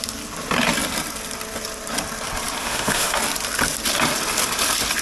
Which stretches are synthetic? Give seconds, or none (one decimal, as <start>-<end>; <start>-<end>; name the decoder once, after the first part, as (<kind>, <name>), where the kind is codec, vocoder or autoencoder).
2.6-3.2 (autoencoder, DAC-VAE)